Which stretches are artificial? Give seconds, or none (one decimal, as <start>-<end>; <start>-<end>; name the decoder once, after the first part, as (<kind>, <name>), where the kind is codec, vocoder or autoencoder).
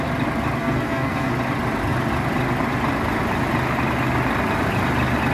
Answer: 0.6-1.3 (codec, SNAC)